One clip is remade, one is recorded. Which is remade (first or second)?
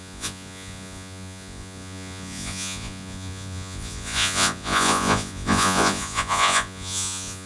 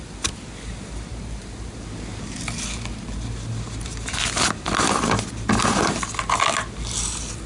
first